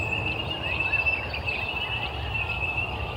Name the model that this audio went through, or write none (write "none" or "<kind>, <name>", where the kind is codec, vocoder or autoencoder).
none